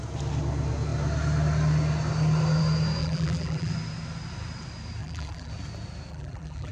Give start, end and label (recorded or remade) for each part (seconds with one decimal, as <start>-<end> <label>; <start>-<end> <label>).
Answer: 0.0-3.0 recorded; 3.0-3.7 remade; 3.7-5.0 recorded; 5.0-5.5 remade; 5.5-6.1 recorded; 6.1-6.7 remade